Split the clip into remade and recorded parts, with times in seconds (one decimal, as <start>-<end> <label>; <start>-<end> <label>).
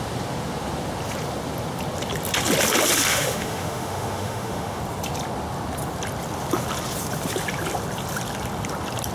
0.0-3.1 recorded; 3.1-4.8 remade; 4.8-9.1 recorded